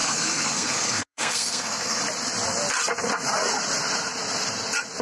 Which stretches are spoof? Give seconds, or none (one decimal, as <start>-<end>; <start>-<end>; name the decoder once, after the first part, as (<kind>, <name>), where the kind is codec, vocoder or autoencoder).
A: 0.0-2.0 (codec, SNAC)